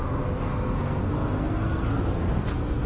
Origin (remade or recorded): remade